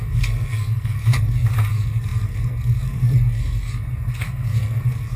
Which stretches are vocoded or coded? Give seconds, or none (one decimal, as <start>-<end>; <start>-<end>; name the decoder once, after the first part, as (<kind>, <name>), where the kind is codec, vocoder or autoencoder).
0.0-5.2 (codec, SNAC)